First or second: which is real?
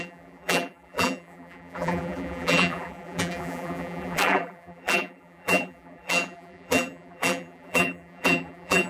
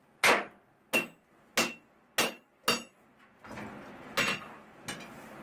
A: second